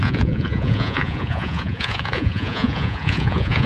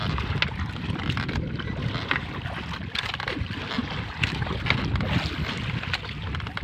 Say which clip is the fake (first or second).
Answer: first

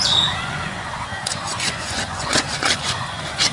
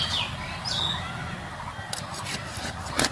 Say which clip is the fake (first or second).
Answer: first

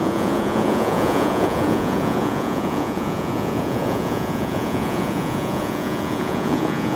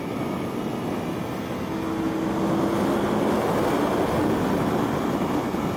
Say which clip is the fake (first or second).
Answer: first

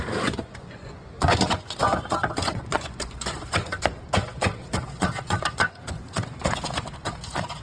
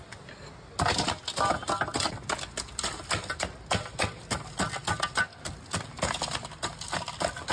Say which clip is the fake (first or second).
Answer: first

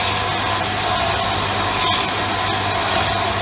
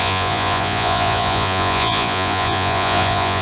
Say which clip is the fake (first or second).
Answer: second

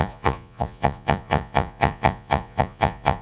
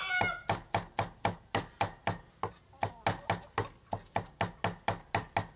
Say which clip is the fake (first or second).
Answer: first